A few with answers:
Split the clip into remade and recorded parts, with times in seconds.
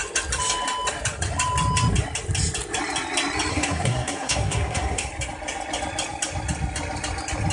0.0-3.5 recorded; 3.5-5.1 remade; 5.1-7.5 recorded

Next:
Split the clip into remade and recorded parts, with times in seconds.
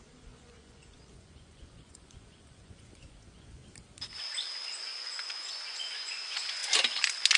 0.0-3.6 remade; 3.6-4.7 recorded; 4.7-6.6 remade; 6.6-7.4 recorded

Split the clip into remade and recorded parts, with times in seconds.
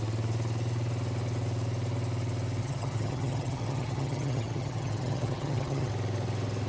0.0-2.6 recorded; 2.6-5.9 remade; 5.9-6.7 recorded